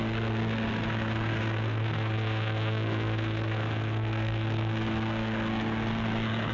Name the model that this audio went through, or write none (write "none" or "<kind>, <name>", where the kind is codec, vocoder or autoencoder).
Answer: codec, SNAC